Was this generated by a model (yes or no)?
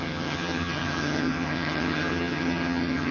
yes